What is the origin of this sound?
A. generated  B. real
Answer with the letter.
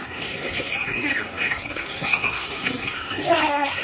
A